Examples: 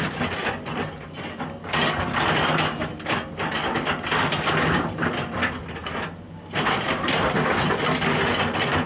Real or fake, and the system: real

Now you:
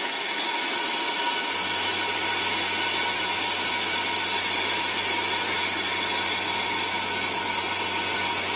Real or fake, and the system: real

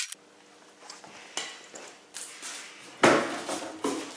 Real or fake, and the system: real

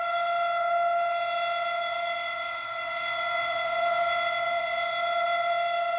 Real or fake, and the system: fake, vocoder, WaveNeXt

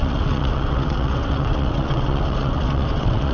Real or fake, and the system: fake, vocoder, WaveNeXt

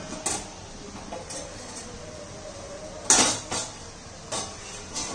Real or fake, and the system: real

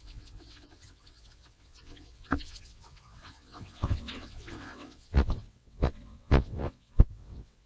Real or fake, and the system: fake, vocoder, WaveNeXt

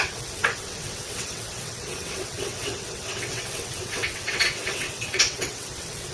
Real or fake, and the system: fake, vocoder, WaveNeXt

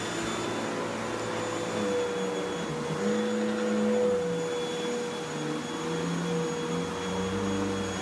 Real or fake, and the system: real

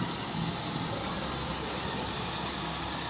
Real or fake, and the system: real